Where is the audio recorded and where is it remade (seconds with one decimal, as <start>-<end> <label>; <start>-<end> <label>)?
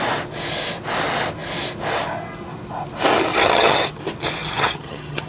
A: 0.0-3.3 recorded; 3.3-4.0 remade; 4.0-4.4 recorded; 4.4-5.3 remade